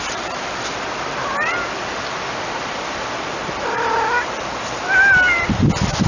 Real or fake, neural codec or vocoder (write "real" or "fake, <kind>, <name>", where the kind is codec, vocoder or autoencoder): fake, vocoder, BigVGAN v2